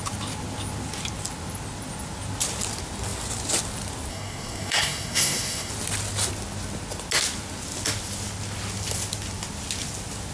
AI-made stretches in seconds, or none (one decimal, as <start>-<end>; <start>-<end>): 4.1-5.7